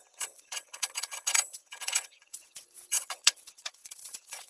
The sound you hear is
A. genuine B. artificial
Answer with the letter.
B